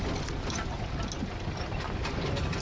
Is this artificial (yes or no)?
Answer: no